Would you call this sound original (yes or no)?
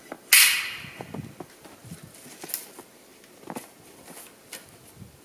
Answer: yes